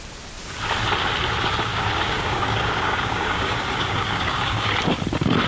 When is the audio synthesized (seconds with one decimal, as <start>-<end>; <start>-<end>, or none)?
1.7-4.7